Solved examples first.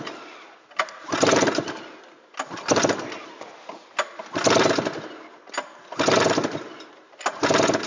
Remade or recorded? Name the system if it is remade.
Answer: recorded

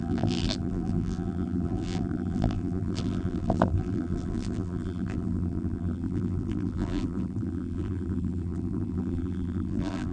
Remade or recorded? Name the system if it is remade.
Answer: remade, vocoder, BigVGAN v2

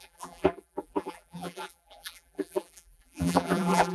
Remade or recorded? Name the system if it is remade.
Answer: remade, vocoder, BigVGAN v2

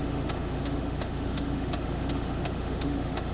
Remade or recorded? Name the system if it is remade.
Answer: remade, autoencoder, DAC-VAE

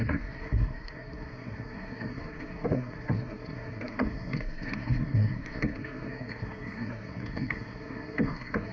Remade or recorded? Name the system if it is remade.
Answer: remade, codec, SNAC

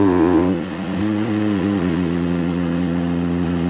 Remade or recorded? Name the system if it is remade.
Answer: remade, vocoder, Vocos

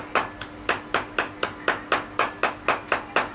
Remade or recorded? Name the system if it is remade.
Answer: recorded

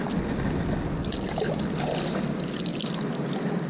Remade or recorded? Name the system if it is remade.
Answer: recorded